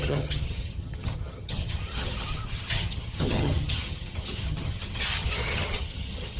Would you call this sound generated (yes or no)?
yes